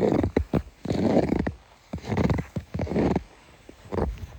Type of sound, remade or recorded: remade